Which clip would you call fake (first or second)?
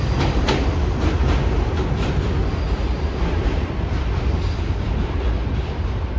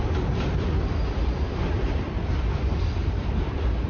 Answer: second